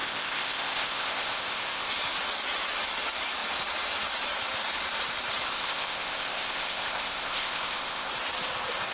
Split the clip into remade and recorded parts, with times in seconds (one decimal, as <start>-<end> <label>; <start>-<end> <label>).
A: 0.0-1.9 remade; 1.9-5.5 recorded; 5.5-8.1 remade; 8.1-8.9 recorded